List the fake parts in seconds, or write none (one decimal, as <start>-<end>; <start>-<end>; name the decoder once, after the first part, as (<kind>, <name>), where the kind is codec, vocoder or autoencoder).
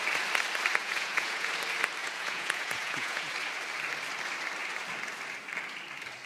0.8-1.5 (vocoder, Vocos); 2.0-3.3